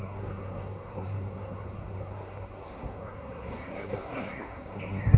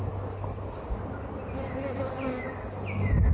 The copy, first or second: first